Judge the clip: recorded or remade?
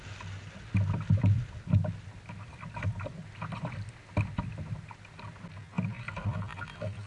recorded